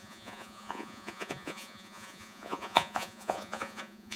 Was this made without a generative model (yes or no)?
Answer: no